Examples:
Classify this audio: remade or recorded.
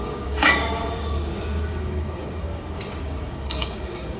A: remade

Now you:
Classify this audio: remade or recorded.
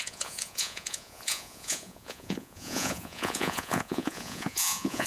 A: remade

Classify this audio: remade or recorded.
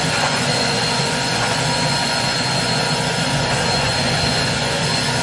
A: remade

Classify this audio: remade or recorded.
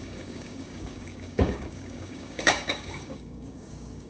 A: remade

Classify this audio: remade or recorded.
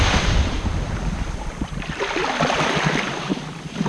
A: remade